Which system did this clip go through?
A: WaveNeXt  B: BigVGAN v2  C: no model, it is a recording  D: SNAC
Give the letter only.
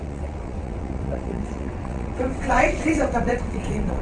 A